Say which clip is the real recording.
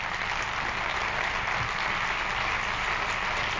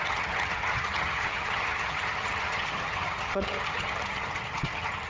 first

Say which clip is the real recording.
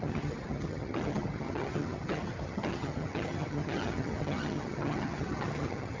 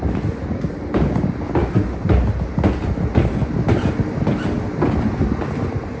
second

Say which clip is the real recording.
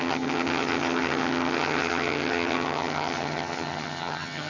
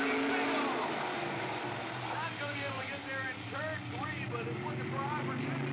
second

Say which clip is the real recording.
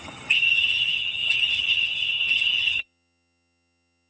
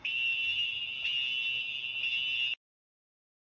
second